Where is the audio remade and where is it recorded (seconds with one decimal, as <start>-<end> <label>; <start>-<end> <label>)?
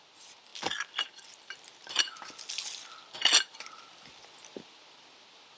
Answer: 0.0-5.6 recorded